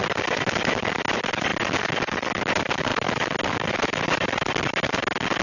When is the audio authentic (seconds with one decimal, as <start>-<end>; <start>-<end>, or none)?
0.0-5.4